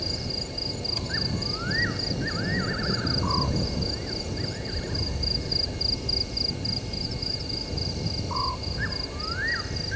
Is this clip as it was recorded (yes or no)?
yes